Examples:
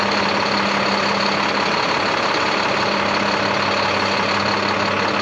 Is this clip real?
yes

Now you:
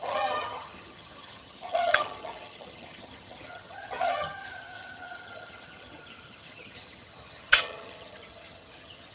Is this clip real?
no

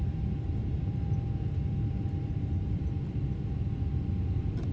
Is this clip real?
no